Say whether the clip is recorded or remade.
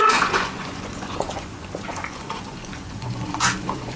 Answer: remade